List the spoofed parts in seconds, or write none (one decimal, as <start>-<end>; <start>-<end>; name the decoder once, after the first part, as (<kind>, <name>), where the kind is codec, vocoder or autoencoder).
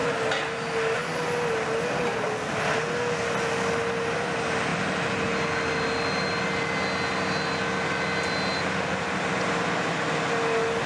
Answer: none